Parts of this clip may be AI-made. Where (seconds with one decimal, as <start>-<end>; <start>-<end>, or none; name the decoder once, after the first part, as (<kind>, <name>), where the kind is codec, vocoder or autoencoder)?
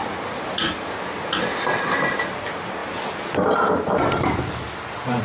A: none